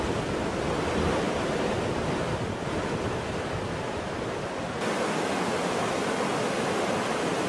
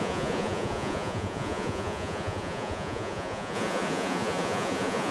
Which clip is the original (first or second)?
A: first